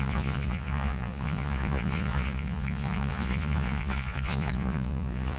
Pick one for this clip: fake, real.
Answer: fake